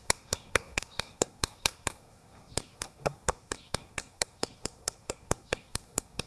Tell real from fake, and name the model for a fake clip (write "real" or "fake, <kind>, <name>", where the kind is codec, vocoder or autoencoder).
fake, codec, SNAC